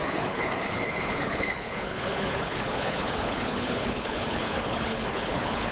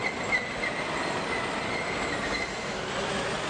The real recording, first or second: second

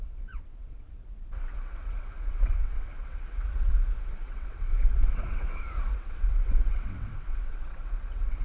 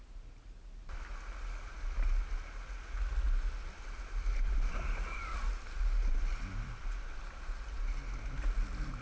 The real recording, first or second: second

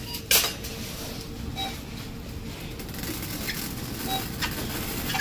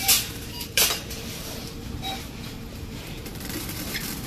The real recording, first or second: first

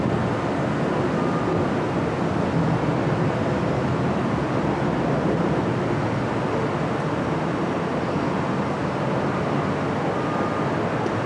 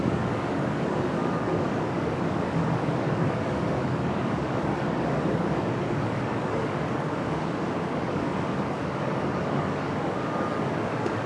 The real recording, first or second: first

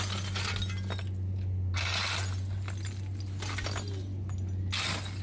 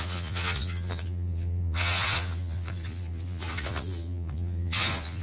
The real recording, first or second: first